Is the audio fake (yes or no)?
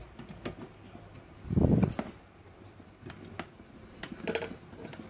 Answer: no